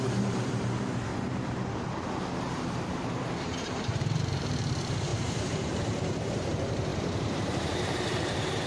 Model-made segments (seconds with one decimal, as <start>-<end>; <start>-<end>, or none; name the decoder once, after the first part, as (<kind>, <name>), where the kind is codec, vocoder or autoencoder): 0.0-1.1 (vocoder, BigVGAN v2); 2.4-8.7